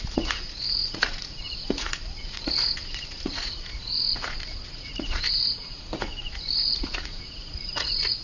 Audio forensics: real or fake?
fake